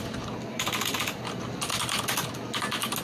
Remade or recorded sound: recorded